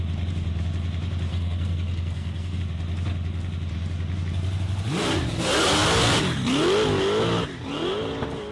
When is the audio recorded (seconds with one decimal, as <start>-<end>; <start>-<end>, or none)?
0.0-1.3; 2.6-8.5

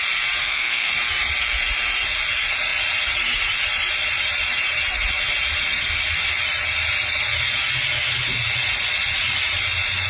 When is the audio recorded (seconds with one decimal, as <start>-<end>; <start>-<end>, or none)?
0.0-0.4; 0.9-10.1

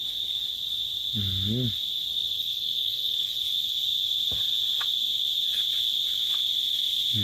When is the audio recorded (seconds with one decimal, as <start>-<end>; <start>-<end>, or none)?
0.0-2.1; 3.4-7.2

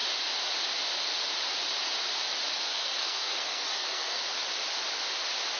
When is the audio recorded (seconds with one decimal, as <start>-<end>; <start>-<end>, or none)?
0.0-2.7; 4.2-5.6

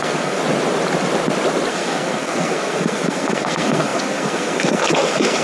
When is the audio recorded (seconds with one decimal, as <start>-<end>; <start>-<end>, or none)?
0.4-1.7